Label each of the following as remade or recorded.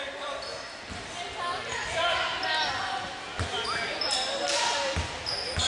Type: recorded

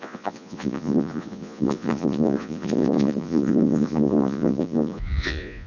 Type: remade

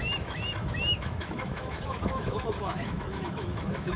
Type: remade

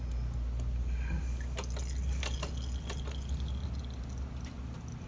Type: recorded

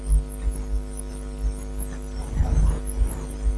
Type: recorded